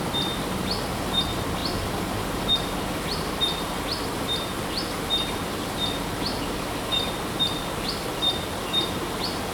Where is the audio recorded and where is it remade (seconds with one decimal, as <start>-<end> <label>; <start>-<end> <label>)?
0.0-9.5 recorded